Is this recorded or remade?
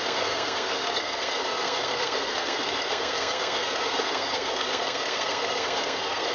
remade